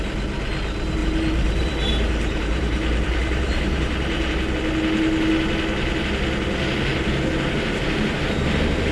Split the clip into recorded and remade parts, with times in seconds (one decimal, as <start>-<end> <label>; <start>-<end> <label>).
0.0-1.0 recorded; 1.0-4.5 remade; 4.5-8.9 recorded